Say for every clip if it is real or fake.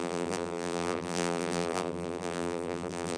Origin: fake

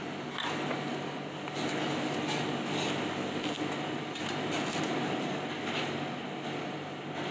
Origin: real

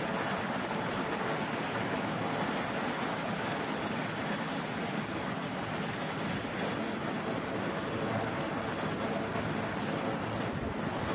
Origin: real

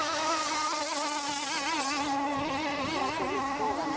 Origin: fake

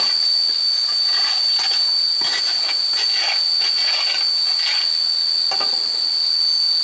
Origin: real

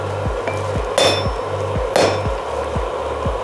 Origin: real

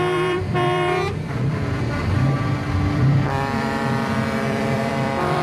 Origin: fake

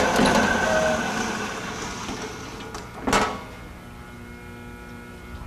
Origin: real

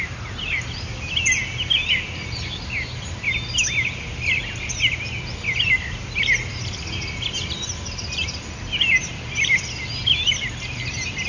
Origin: real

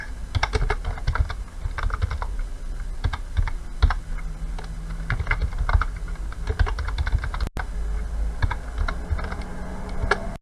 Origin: real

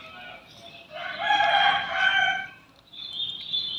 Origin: real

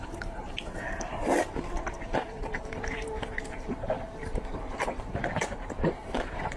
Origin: fake